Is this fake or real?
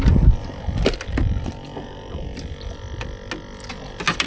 real